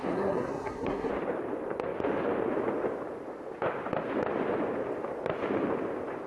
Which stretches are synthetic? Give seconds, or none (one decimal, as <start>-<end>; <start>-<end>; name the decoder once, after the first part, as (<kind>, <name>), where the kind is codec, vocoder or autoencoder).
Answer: 0.0-1.1 (codec, SNAC)